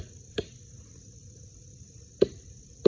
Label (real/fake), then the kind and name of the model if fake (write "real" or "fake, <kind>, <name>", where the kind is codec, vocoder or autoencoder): real